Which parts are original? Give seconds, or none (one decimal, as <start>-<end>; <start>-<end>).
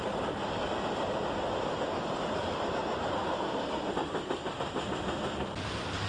0.0-2.4; 3.2-4.0; 4.5-6.1